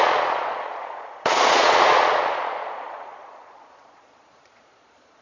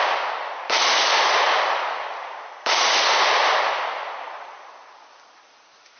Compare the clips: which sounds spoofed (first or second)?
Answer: first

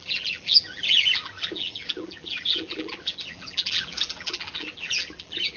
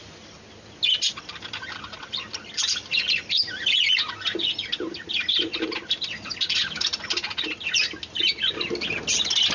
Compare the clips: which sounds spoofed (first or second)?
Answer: first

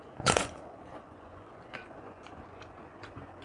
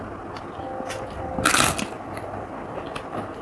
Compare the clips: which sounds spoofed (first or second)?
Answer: first